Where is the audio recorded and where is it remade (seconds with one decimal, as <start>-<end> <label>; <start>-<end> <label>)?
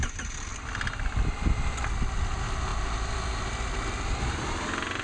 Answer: 0.0-5.0 remade